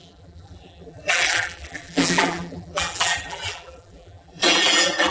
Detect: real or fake fake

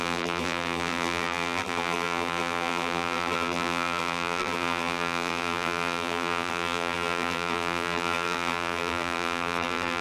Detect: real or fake fake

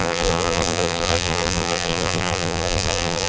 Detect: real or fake fake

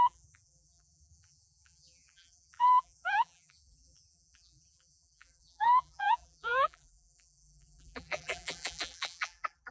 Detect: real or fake fake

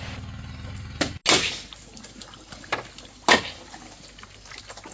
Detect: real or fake real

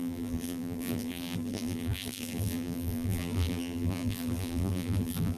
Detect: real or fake fake